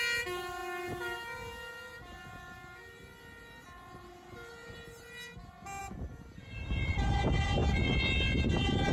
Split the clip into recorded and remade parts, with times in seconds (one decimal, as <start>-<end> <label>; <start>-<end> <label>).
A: 0.0-8.9 recorded